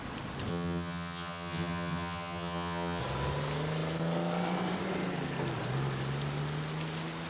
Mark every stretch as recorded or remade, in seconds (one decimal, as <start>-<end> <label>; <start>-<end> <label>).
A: 0.0-0.5 recorded; 0.5-3.0 remade; 3.0-7.3 recorded